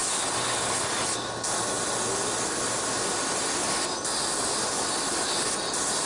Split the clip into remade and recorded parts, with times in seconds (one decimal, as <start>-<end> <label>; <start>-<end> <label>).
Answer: 0.0-6.1 recorded